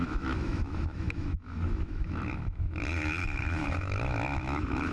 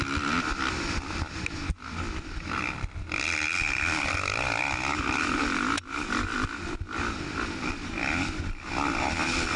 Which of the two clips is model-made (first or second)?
first